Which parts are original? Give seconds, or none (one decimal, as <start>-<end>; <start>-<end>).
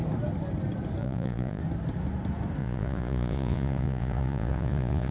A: 0.0-1.0; 1.6-2.6